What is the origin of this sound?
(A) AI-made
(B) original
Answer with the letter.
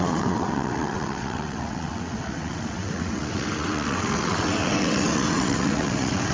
A